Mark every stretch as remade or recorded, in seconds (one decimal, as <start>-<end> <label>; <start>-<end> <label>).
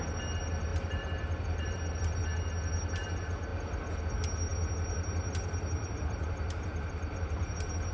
0.0-0.7 recorded; 0.7-2.2 remade; 2.2-4.5 recorded; 4.5-7.9 remade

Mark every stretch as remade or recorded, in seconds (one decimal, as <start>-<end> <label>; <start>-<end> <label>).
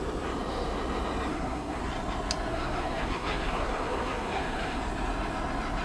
0.0-1.3 recorded; 1.3-1.8 remade; 1.8-2.5 recorded; 2.5-4.8 remade; 4.8-5.8 recorded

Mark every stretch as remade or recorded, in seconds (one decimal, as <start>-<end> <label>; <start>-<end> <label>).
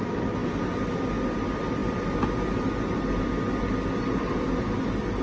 0.0-5.2 recorded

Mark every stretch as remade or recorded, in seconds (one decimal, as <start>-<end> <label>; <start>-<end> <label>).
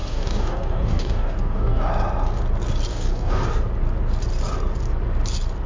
0.0-1.9 remade; 1.9-2.9 recorded; 2.9-3.5 remade; 3.5-5.7 recorded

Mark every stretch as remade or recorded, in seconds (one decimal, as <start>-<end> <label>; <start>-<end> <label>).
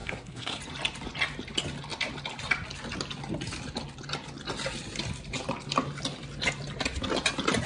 0.0-0.6 remade; 0.6-7.7 recorded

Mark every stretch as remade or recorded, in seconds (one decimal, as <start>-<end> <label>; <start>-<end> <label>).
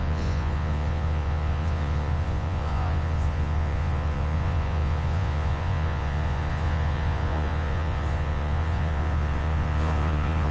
0.0-10.5 remade